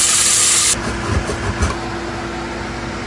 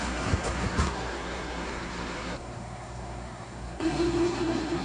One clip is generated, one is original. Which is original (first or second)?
first